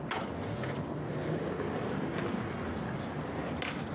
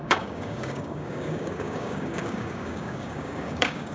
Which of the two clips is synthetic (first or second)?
second